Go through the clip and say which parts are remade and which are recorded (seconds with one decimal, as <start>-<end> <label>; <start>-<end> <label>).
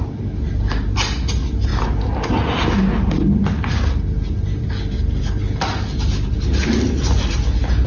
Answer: 0.0-7.9 recorded